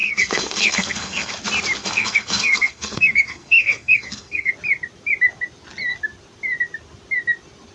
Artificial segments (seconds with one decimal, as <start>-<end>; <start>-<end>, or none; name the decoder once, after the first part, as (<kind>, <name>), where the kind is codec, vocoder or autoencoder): 0.0-1.3 (codec, SNAC); 1.8-4.5